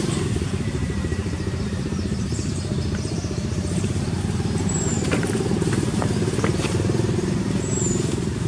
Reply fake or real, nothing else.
fake